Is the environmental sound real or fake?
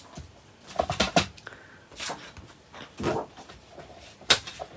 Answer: real